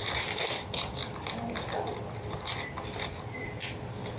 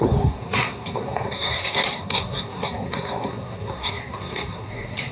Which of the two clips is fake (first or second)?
second